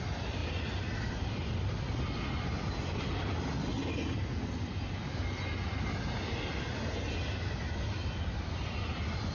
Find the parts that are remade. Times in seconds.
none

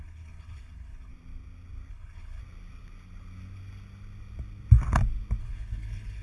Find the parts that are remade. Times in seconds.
0.0-1.1 (codec, HILCodec); 1.9-2.4; 5.4-6.2

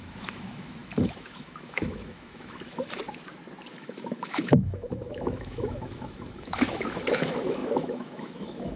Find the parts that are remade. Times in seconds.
0.0-3.0 (autoencoder, DAC-VAE); 3.7-8.8

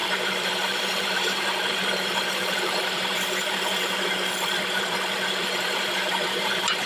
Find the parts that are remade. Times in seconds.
0.0-6.9 (vocoder, BigVGAN v2)

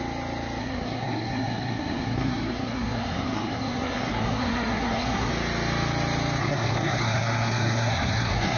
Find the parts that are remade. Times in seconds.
0.6-5.3 (codec, SNAC); 6.4-8.6

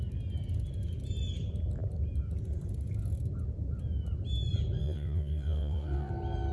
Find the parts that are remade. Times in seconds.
4.8-6.1 (vocoder, WaveNeXt)

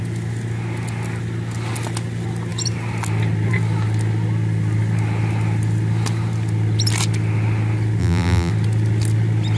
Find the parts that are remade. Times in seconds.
8.0-8.5 (vocoder, BigVGAN v2)